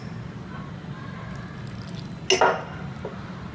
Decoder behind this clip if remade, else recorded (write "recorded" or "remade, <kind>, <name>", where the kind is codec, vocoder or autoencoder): recorded